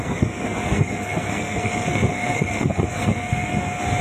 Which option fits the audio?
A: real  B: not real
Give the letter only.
B